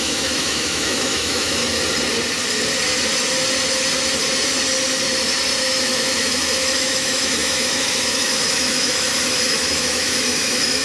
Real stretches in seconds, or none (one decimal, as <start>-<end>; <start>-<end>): 1.6-5.6